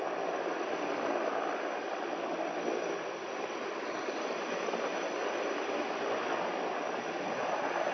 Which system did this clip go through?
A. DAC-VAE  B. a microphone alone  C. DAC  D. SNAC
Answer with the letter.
B